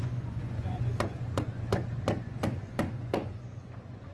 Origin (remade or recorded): remade